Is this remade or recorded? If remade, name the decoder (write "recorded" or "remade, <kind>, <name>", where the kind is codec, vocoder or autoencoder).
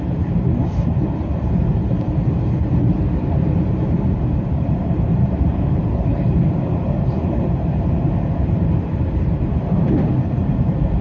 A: remade, vocoder, BigVGAN v2